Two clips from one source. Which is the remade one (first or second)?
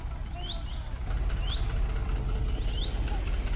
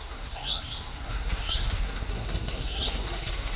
second